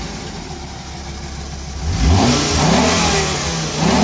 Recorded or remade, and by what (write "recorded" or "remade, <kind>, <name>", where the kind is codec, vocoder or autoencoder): recorded